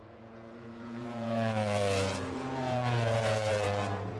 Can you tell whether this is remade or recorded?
remade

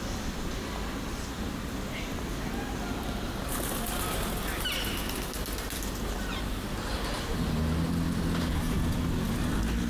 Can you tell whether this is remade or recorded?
recorded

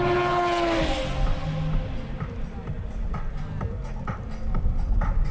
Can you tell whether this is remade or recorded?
recorded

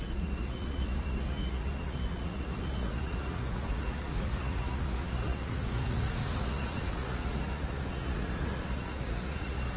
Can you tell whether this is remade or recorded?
remade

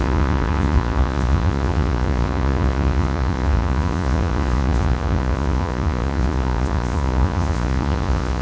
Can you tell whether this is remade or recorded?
remade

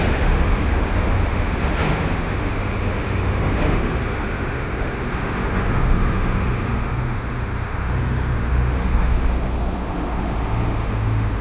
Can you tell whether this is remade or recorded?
remade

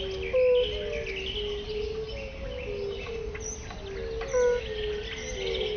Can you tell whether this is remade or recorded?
recorded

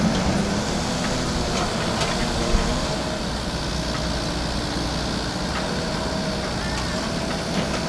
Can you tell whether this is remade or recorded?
recorded